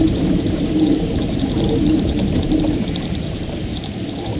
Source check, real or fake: fake